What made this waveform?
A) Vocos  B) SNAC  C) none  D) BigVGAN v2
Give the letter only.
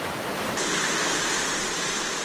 C